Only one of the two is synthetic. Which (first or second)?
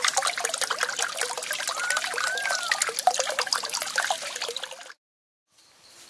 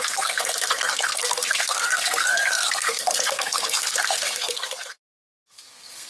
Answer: second